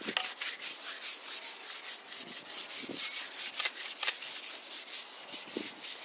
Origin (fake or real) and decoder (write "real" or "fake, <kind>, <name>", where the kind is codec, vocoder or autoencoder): real